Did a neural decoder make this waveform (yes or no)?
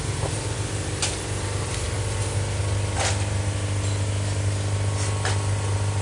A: no